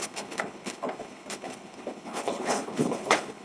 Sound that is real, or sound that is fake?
fake